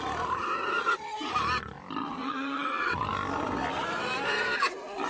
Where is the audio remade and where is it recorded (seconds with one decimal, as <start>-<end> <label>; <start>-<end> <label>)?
0.0-2.2 recorded; 2.2-3.0 remade; 3.0-5.1 recorded